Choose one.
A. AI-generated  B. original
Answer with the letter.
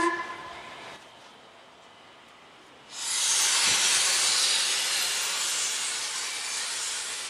B